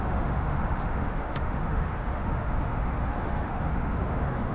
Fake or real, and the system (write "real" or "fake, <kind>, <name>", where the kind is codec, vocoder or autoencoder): fake, autoencoder, DAC-VAE